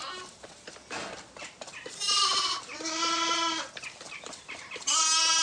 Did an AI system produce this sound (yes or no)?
no